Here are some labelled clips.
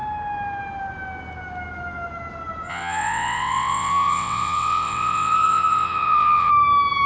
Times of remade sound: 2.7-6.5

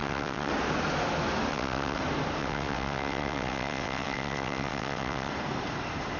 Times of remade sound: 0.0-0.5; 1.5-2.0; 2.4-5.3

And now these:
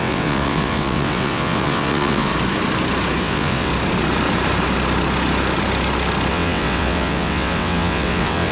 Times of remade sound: 0.0-2.3; 3.2-3.7; 6.3-8.5

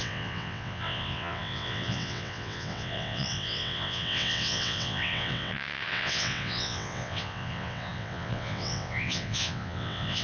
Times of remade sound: 0.0-10.2